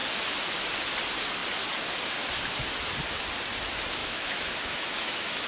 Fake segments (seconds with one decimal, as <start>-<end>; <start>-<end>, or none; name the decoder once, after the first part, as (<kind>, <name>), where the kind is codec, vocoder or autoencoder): 4.0-5.5 (autoencoder, DAC-VAE)